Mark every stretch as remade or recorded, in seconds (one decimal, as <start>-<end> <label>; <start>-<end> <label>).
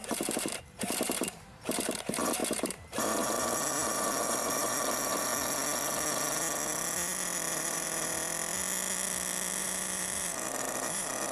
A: 0.0-5.3 remade; 5.3-7.5 recorded; 7.5-8.5 remade; 8.5-9.6 recorded; 9.6-11.3 remade